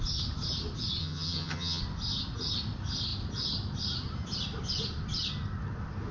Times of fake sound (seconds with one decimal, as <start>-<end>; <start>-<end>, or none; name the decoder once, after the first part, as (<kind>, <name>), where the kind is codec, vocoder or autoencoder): 1.0-1.8 (vocoder, HiFi-GAN)